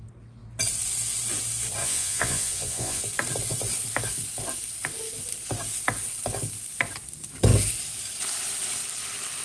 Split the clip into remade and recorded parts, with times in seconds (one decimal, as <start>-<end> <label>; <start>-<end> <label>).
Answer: 0.0-1.8 recorded; 1.8-3.0 remade; 3.0-9.4 recorded